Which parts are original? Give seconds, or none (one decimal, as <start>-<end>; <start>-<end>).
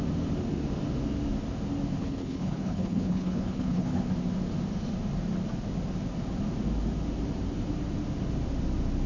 0.0-2.0; 4.0-9.1